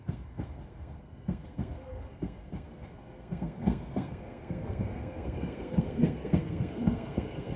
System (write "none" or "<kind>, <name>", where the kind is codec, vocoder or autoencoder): codec, SNAC